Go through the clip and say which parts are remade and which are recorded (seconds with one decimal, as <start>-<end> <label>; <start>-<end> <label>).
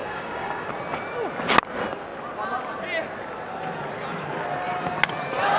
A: 0.0-0.7 remade; 0.7-5.6 recorded